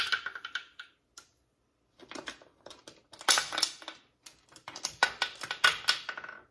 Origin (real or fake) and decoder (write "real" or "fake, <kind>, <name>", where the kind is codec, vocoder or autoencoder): real